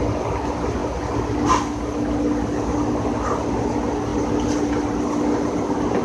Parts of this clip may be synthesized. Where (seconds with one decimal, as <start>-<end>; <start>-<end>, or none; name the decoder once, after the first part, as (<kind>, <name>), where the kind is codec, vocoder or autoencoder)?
4.1-4.7 (vocoder, BigVGAN v2)